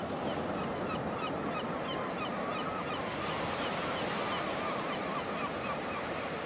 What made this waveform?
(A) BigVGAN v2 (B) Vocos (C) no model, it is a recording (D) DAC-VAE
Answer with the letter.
A